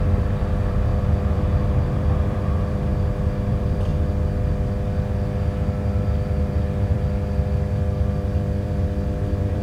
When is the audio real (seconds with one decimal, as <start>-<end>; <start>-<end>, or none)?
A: 2.9-3.5; 3.9-6.4